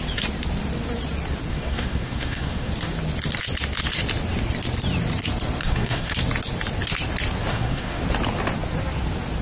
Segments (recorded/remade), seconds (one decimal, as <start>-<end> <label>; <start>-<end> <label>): 0.0-1.5 recorded; 1.5-2.7 remade; 2.7-5.6 recorded; 5.6-6.1 remade; 6.1-7.5 recorded; 7.5-8.0 remade; 8.0-9.4 recorded